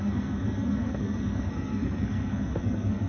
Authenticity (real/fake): fake